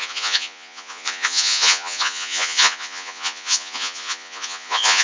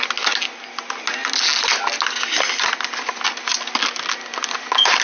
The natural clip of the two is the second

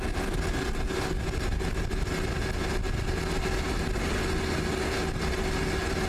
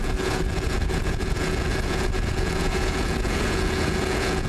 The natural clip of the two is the first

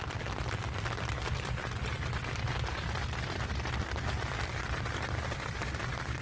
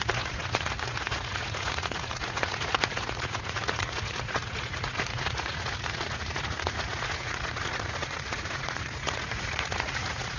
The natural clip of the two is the first